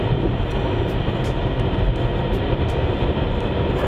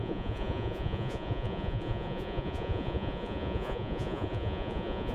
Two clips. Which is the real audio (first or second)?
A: first